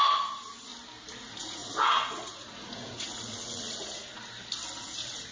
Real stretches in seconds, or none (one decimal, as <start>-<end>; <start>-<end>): 0.7-1.2; 4.1-4.8